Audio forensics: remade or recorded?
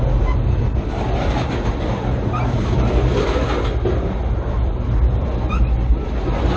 recorded